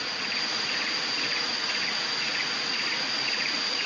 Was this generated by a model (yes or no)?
yes